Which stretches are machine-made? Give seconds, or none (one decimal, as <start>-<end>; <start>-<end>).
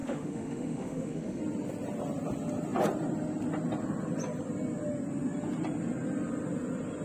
0.0-1.4